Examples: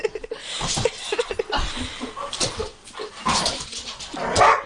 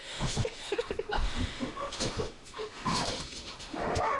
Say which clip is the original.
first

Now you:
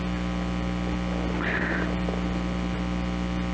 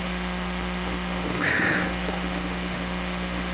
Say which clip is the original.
first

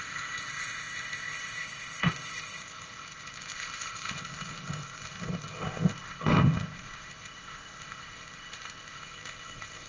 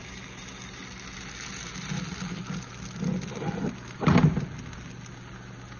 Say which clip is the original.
second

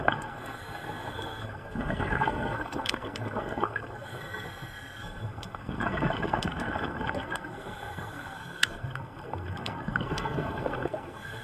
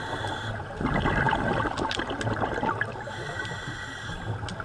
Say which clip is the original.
second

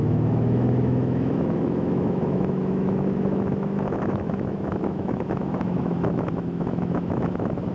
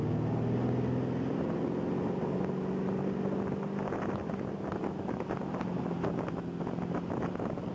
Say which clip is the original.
second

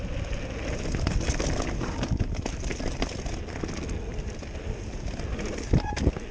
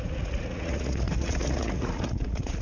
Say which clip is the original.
first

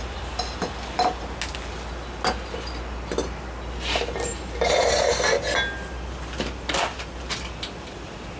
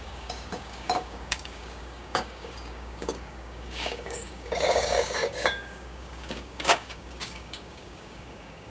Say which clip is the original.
first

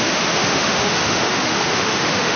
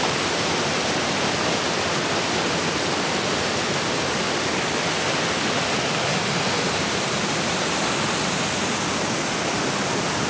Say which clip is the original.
second